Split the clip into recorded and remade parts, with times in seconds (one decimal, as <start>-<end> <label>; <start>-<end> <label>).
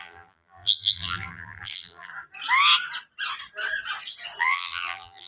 0.0-2.1 remade; 2.1-4.4 recorded; 4.4-5.3 remade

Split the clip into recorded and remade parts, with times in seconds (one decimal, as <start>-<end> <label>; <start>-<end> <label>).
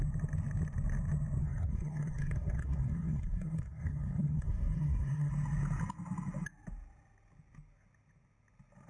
0.0-1.4 recorded; 1.4-5.3 remade; 5.3-8.9 recorded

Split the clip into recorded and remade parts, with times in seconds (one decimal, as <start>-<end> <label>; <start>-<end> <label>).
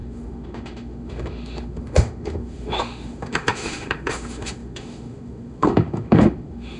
0.0-6.8 remade